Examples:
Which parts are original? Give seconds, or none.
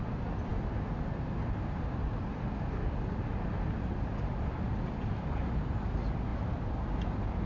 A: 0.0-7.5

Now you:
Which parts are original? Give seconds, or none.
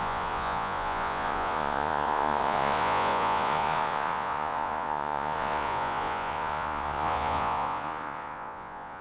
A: none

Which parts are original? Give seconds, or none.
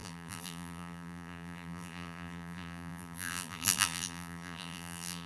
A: none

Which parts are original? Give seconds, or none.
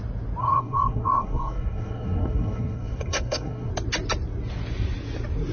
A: 0.0-0.4; 3.7-5.5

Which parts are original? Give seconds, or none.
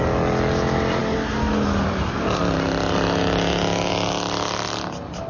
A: 0.0-5.3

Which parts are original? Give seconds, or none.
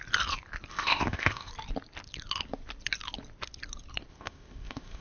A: 0.0-0.7; 1.5-4.1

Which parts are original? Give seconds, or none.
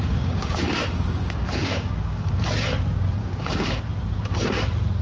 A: 2.4-3.2; 3.8-5.0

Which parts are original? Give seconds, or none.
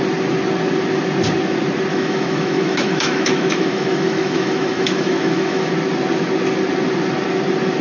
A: 0.0-1.9; 5.7-7.8